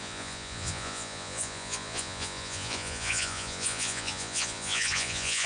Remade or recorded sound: remade